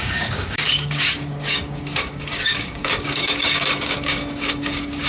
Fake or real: fake